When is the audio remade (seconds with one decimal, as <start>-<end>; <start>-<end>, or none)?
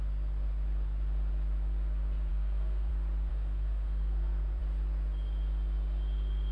2.3-2.9; 3.3-4.6